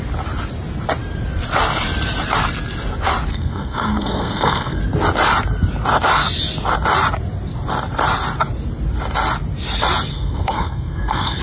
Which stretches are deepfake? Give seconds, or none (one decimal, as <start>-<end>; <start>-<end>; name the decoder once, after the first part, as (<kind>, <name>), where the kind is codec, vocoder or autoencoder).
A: 3.3-4.8 (codec, SNAC); 10.1-11.4